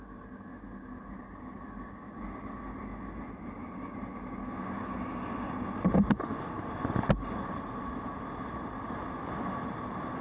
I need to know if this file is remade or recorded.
recorded